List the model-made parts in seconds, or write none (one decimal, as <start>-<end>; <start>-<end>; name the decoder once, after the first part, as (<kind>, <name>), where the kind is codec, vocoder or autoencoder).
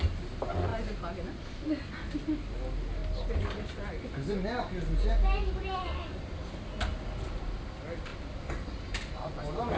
none